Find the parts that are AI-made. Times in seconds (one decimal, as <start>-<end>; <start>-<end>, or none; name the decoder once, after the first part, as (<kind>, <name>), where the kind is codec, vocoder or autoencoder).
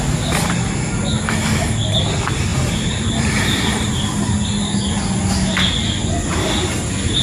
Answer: 2.5-3.9 (vocoder, BigVGAN v2)